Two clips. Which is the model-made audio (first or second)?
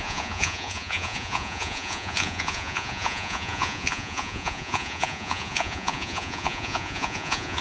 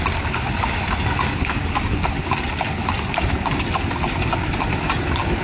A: first